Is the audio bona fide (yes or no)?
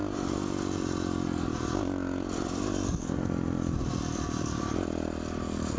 yes